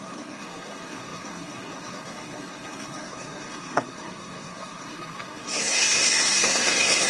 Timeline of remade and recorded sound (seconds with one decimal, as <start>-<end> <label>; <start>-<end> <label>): 0.0-7.1 remade